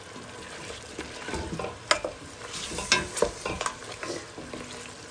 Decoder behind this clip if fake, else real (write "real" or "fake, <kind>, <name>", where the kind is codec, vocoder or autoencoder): real